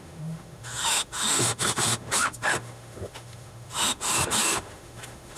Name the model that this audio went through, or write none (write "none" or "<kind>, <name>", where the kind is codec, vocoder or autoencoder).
autoencoder, DAC-VAE